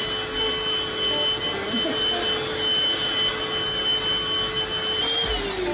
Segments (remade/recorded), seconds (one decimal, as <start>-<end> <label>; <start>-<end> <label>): 0.0-5.7 recorded